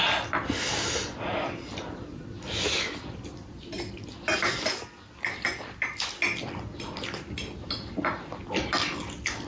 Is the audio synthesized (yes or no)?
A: no